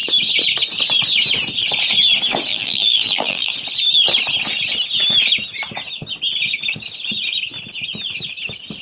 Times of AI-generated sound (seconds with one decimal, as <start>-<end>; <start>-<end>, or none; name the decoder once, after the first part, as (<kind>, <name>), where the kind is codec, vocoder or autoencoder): 2.5-3.5 (vocoder, BigVGAN v2)